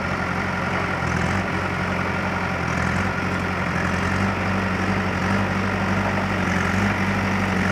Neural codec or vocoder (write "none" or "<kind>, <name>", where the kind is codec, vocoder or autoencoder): none